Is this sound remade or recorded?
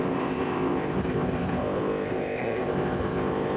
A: remade